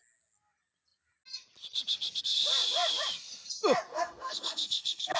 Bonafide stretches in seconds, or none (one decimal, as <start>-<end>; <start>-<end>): 0.0-3.9